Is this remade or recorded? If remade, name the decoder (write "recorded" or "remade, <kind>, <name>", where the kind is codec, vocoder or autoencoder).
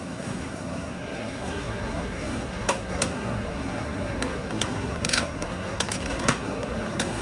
remade, codec, SNAC